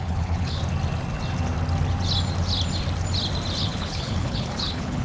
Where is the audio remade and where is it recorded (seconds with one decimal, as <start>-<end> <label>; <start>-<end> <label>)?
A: 0.0-0.6 remade; 0.6-3.6 recorded; 3.6-5.0 remade